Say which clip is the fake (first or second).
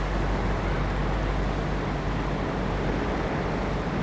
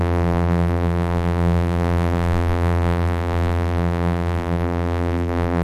second